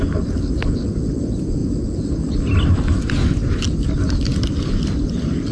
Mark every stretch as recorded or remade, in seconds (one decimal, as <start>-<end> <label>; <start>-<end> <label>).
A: 0.0-5.5 recorded